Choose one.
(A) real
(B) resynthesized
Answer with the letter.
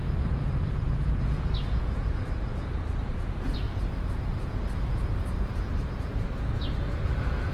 B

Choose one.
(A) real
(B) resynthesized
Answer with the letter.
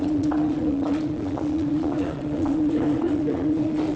B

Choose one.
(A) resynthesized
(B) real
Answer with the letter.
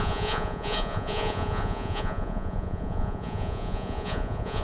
A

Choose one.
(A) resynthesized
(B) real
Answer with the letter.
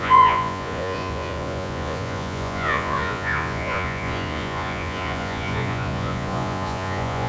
A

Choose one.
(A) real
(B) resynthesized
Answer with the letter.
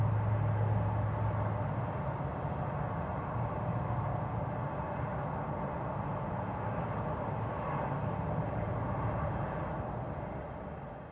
A